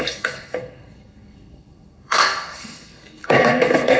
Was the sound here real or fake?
fake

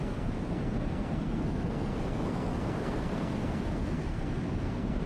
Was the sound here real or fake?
fake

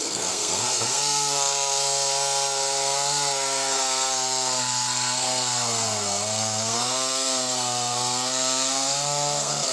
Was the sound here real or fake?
fake